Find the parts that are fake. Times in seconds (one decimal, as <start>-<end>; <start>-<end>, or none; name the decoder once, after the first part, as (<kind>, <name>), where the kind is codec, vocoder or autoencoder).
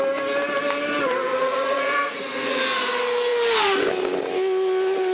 1.3-2.6 (vocoder, Vocos)